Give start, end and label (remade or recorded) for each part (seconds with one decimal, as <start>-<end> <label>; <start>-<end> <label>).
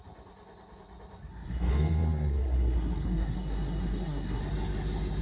0.0-1.3 recorded; 1.3-4.4 remade; 4.4-5.2 recorded